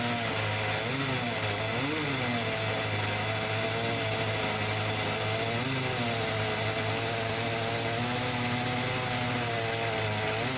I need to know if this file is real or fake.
real